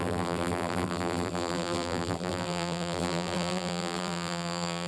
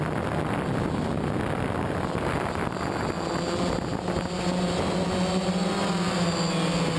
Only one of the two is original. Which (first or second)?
second